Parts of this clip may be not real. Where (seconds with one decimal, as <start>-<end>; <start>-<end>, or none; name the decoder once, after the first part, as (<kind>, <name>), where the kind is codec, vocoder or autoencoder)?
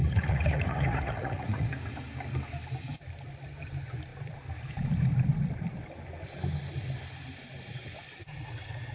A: 0.0-1.7 (vocoder, Vocos)